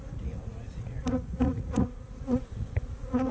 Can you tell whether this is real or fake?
fake